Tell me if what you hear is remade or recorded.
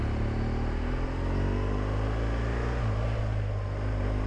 recorded